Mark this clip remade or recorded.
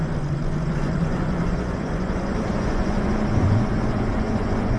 remade